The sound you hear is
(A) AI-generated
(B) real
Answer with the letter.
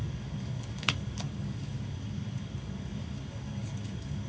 A